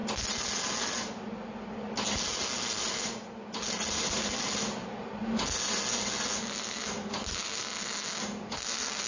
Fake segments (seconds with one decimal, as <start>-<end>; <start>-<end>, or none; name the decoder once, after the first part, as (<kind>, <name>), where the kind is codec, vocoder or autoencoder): none